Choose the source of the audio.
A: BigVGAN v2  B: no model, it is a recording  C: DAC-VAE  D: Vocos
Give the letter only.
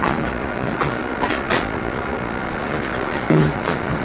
D